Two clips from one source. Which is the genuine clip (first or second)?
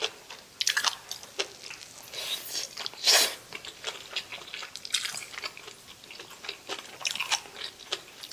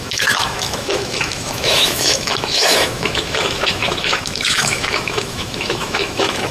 first